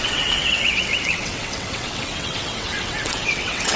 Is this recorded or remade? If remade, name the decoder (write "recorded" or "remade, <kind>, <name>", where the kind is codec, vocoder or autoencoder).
remade, vocoder, WaveNeXt